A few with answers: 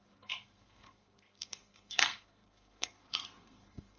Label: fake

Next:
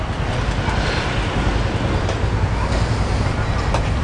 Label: real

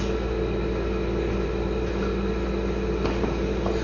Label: real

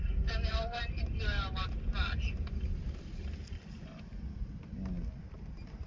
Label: real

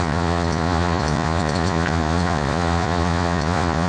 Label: fake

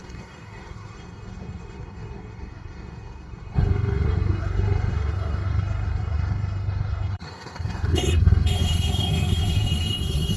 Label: fake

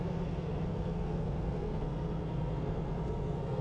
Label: fake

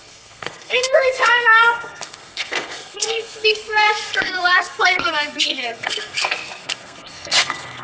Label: fake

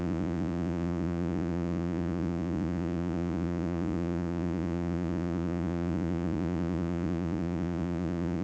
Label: fake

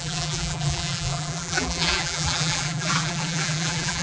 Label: fake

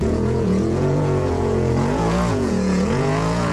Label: fake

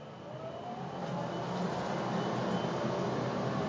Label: real